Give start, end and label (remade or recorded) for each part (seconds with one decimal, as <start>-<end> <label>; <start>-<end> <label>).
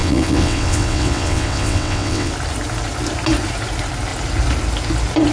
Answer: 0.0-2.3 remade; 2.3-5.3 recorded